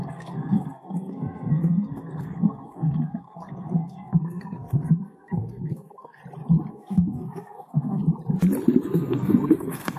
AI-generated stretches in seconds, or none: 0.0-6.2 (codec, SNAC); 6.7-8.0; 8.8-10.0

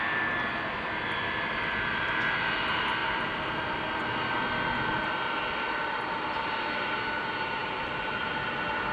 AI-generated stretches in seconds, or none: none

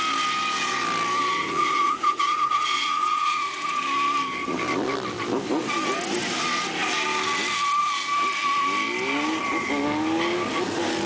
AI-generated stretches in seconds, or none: 1.4-3.8 (vocoder, Vocos)

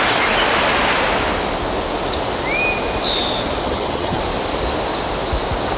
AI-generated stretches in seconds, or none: 3.6-4.2 (vocoder, HiFi-GAN)